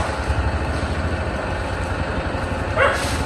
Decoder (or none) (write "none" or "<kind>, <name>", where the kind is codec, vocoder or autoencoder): none